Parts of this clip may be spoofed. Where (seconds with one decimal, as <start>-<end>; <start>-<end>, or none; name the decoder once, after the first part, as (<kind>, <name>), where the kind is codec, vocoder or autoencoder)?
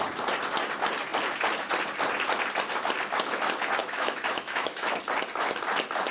3.8-5.0 (autoencoder, DAC-VAE)